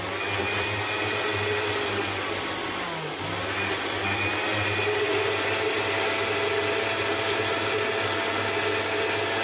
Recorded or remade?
recorded